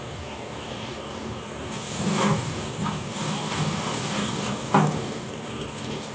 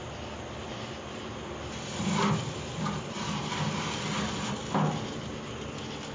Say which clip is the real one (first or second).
second